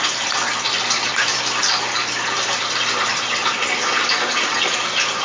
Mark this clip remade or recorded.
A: recorded